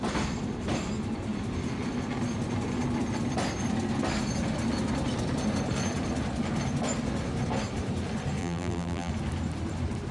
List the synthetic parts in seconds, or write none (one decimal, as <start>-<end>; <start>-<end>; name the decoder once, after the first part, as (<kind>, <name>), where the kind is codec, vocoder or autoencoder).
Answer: 8.4-9.1 (vocoder, BigVGAN v2)